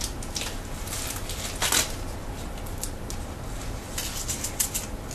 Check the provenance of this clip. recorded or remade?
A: recorded